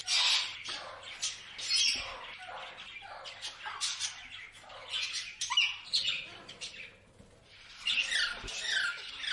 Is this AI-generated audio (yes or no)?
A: no